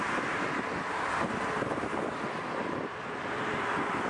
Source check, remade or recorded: recorded